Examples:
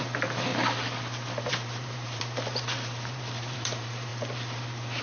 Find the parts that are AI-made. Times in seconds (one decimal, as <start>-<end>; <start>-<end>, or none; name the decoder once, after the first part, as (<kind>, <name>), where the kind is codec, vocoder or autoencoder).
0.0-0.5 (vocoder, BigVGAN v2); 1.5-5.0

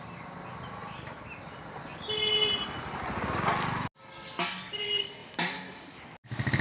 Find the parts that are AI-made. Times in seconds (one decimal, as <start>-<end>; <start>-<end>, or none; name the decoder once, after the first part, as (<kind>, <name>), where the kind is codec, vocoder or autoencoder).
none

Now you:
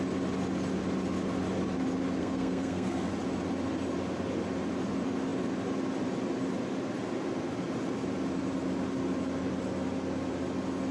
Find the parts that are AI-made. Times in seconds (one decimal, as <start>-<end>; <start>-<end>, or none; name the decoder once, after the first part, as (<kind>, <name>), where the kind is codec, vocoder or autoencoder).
2.2-3.1 (codec, SNAC)

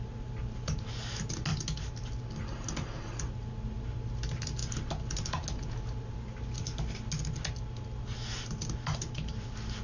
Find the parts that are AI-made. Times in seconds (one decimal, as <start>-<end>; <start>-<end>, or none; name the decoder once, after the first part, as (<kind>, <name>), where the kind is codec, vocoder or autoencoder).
none